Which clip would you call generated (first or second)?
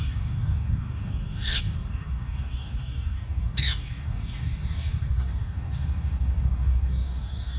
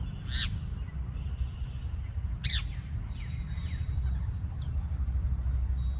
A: first